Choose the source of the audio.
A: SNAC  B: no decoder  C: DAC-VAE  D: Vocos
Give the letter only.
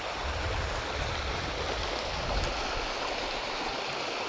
B